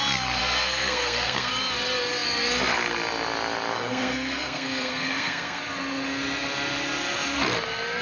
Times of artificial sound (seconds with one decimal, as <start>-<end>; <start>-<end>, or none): 0.4-1.5; 3.7-5.6